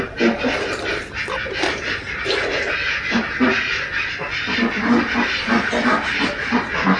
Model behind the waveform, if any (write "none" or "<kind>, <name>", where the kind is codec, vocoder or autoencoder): none